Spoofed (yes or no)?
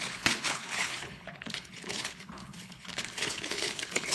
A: yes